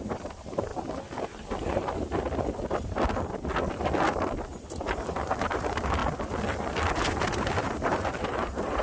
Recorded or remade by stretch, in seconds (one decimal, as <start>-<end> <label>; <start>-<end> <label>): 0.0-0.7 remade; 0.7-4.7 recorded; 4.7-6.0 remade; 6.0-6.9 recorded; 6.9-8.8 remade

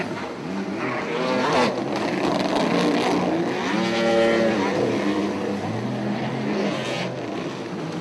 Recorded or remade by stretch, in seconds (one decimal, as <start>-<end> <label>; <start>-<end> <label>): 0.0-8.0 recorded

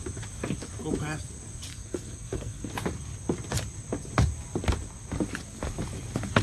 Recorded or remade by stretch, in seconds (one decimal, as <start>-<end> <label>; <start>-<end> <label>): 0.0-1.7 recorded; 1.7-2.7 remade; 2.7-6.4 recorded